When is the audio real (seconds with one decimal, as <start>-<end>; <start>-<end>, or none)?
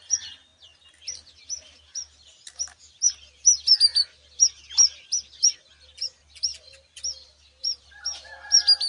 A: 0.0-8.9